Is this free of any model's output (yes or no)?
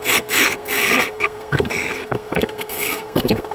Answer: no